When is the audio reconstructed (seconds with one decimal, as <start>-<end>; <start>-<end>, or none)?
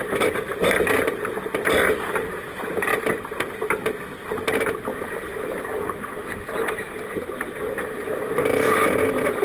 4.9-6.0